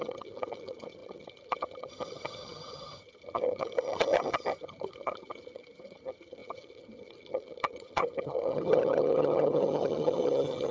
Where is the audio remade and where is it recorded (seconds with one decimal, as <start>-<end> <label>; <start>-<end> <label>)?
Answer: 0.0-10.7 remade